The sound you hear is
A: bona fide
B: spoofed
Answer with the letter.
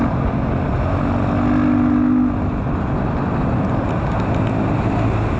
A